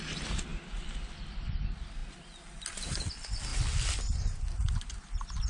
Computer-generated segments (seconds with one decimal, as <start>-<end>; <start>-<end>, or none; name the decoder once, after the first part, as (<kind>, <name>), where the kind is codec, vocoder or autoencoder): none